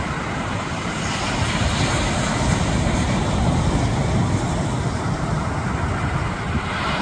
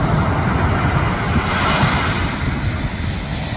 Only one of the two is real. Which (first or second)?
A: second